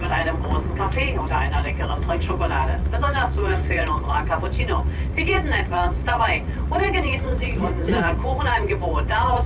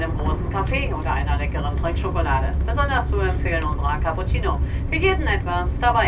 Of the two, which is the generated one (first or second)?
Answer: first